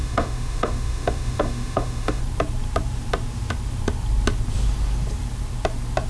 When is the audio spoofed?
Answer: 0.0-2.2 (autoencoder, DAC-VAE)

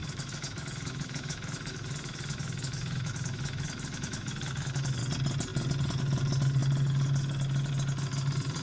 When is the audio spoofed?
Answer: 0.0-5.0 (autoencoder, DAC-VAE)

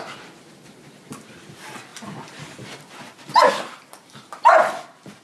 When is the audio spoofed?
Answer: none

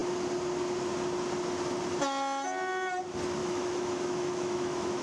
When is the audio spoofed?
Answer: 3.4-5.0 (autoencoder, DAC-VAE)

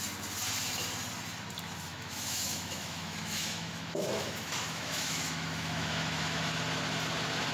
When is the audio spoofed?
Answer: 1.9-6.4 (autoencoder, DAC-VAE)

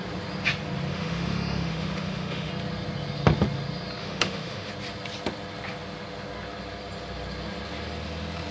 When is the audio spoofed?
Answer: 0.9-2.5 (autoencoder, DAC-VAE); 4.0-4.7

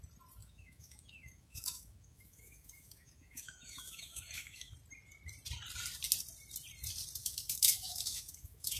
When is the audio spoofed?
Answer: 0.4-4.7 (autoencoder, DAC-VAE); 7.2-8.8